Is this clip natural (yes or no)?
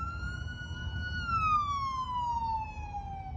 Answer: yes